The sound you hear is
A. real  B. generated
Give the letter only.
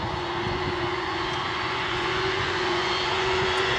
B